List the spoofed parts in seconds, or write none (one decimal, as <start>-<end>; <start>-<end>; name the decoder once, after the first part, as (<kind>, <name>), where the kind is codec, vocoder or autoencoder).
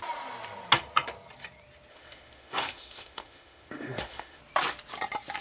1.9-4.4 (autoencoder, DAC-VAE)